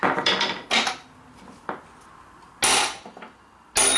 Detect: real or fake real